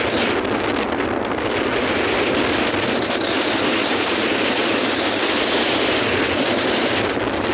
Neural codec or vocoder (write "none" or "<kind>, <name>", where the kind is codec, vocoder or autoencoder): none